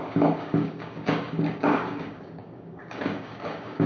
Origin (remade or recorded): remade